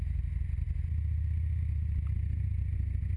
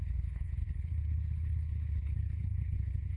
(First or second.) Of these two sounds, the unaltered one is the first